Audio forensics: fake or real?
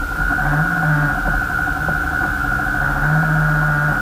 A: real